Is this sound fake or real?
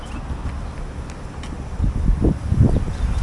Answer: real